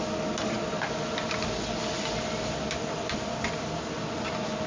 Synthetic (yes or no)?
no